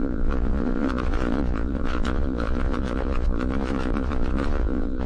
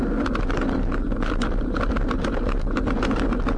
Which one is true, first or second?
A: second